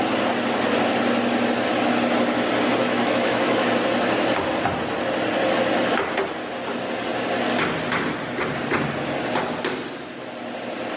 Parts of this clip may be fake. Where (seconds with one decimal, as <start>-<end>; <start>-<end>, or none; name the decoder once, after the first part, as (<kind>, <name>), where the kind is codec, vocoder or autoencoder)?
2.8-3.7 (autoencoder, DAC-VAE)